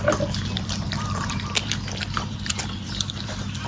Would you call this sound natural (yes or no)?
no